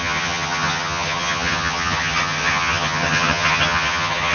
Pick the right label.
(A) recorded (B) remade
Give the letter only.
B